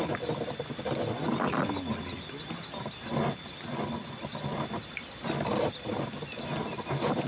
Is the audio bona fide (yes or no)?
yes